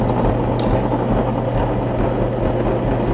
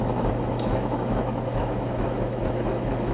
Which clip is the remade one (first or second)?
second